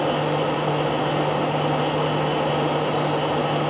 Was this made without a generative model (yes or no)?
yes